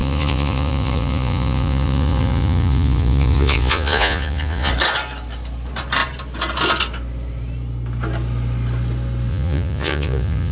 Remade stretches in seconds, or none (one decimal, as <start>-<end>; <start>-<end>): 0.0-4.7; 9.3-10.5